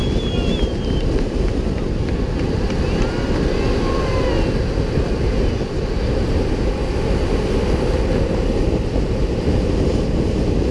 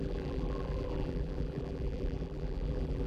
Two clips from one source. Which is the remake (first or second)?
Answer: second